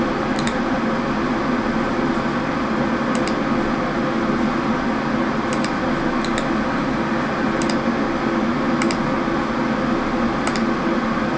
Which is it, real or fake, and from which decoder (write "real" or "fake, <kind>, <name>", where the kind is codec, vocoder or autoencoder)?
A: real